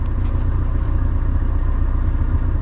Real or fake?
fake